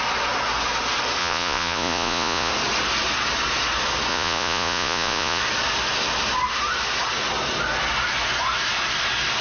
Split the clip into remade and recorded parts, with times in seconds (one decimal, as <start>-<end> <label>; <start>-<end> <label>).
0.0-1.2 recorded; 1.2-2.5 remade; 2.5-4.1 recorded; 4.1-5.4 remade; 5.4-9.4 recorded